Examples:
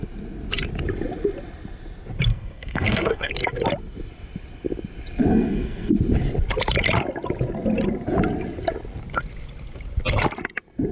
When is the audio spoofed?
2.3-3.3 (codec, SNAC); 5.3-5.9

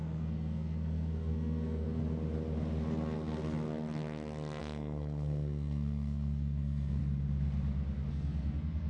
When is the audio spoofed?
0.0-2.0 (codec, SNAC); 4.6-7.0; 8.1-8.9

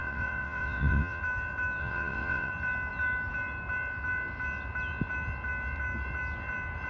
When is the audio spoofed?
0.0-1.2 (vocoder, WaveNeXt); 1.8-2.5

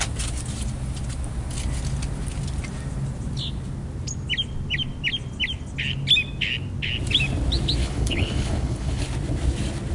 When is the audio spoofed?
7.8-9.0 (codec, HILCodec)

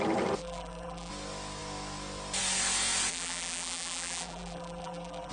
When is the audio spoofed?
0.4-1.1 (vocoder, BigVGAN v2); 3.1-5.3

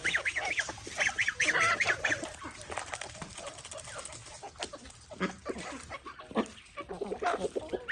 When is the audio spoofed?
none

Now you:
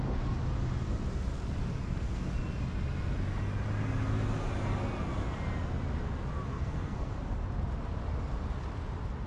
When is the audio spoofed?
1.8-2.3 (codec, SNAC); 6.5-7.1